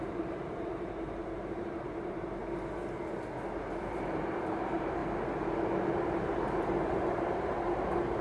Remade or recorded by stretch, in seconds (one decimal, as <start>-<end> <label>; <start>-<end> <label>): 0.0-2.4 remade; 2.4-3.7 recorded; 3.7-5.0 remade; 5.0-5.8 recorded; 5.8-8.2 remade